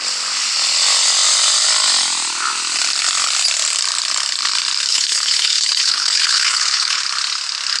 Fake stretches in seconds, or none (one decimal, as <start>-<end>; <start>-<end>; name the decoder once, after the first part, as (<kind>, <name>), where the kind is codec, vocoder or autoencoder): 4.9-7.0 (codec, HILCodec)